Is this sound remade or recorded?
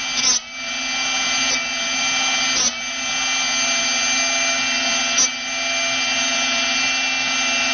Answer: recorded